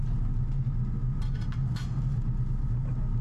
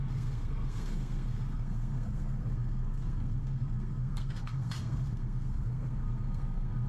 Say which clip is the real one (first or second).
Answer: first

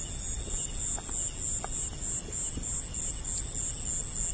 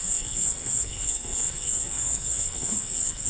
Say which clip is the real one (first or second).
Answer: first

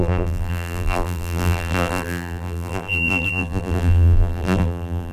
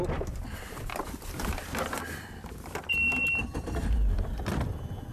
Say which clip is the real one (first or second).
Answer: second